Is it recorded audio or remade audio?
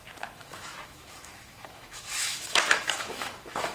remade